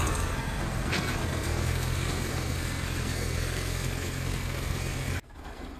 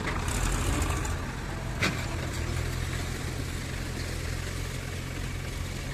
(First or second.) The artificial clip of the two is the first